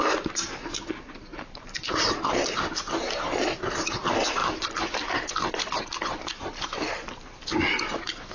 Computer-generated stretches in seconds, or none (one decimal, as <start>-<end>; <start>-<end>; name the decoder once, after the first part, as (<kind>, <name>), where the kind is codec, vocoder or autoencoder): 1.3-2.3 (vocoder, BigVGAN v2)